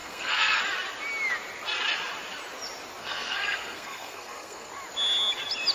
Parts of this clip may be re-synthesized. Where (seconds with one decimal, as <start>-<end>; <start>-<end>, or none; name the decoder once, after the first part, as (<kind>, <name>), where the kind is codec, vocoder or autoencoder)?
0.0-0.6 (codec, SNAC); 3.0-4.7